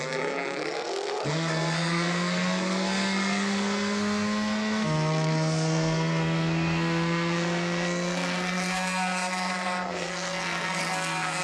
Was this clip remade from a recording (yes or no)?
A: yes